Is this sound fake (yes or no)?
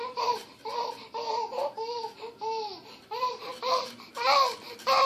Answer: yes